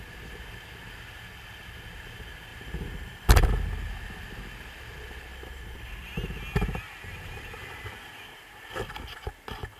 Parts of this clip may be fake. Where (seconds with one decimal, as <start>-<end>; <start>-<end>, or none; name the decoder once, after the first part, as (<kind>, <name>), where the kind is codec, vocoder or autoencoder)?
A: 2.5-3.5 (vocoder, BigVGAN v2); 5.3-5.9